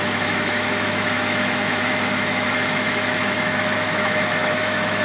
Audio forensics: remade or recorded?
remade